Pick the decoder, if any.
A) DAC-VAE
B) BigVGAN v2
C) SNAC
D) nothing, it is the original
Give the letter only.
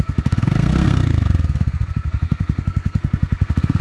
C